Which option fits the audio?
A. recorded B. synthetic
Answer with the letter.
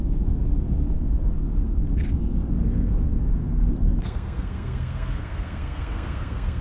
B